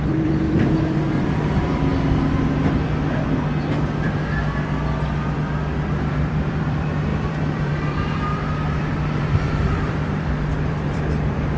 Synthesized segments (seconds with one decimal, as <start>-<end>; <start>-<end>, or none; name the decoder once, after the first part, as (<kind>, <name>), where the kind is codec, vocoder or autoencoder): 0.0-1.9 (vocoder, BigVGAN v2); 6.1-11.6